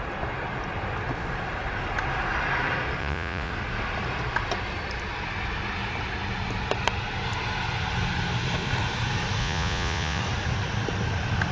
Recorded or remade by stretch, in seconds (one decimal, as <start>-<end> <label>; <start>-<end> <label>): 0.0-3.0 recorded; 3.0-3.5 remade; 3.5-9.4 recorded; 9.4-10.2 remade; 10.2-11.5 recorded